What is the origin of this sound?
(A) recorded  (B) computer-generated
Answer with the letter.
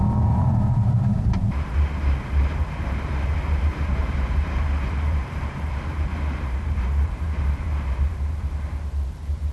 B